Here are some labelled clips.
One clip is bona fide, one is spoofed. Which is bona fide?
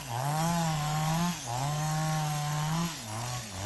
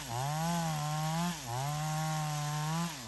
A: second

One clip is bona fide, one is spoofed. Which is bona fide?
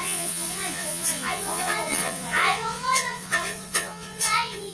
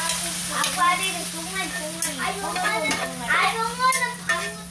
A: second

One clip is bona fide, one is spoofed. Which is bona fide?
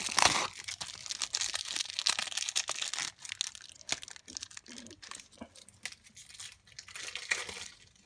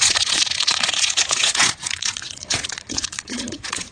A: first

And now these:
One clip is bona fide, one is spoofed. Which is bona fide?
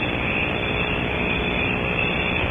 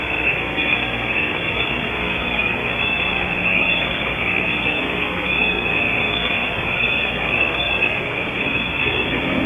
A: first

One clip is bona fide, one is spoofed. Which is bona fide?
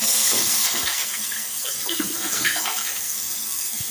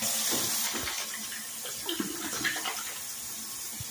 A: second